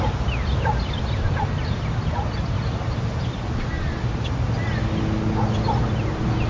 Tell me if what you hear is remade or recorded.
recorded